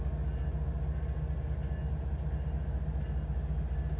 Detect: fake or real real